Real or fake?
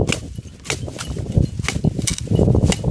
real